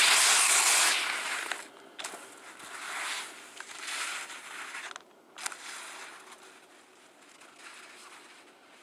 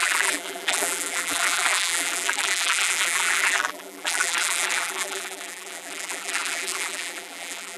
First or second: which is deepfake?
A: second